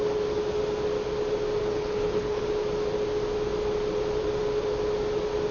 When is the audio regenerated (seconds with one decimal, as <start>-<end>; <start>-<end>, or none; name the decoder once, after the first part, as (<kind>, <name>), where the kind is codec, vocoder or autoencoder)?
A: 1.6-2.4 (codec, HILCodec)